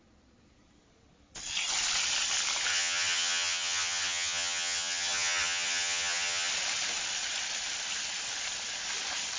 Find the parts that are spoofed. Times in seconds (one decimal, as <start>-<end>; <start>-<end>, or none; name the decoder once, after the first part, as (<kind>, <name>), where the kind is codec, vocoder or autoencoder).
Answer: 2.7-6.5 (vocoder, HiFi-GAN)